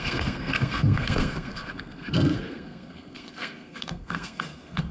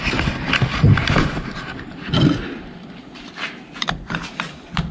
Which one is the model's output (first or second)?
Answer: first